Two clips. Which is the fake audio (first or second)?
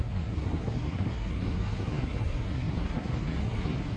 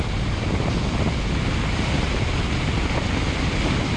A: first